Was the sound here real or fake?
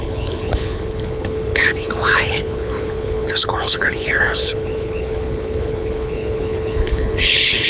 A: fake